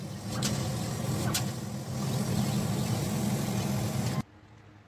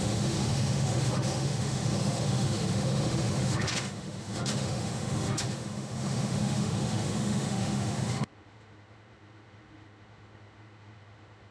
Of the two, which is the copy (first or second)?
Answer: second